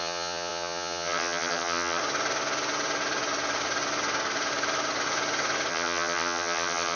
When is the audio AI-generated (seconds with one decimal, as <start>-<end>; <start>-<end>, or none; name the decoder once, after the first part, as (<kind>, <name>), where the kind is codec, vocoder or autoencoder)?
0.0-2.0 (vocoder, HiFi-GAN); 5.7-7.0